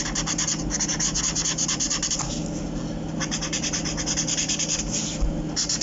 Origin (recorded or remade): recorded